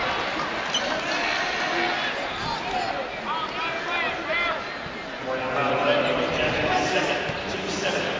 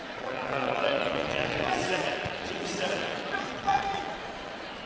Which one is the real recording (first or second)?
first